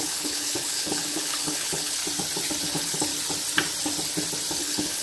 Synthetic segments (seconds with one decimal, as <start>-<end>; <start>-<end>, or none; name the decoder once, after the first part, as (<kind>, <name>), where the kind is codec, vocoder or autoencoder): 0.0-2.0 (codec, HILCodec); 2.6-3.1; 4.6-5.0